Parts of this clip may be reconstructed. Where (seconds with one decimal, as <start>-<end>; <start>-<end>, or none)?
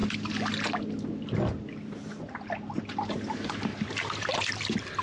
none